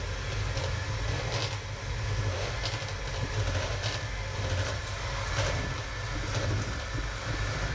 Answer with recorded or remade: recorded